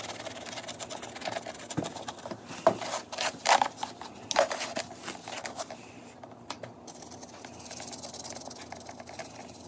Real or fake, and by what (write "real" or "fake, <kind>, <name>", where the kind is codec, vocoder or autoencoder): real